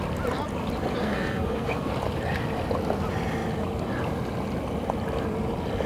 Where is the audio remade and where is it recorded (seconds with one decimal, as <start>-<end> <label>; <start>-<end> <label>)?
0.0-1.0 recorded; 1.0-1.9 remade; 1.9-5.9 recorded